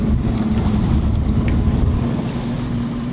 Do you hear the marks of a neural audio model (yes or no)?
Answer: no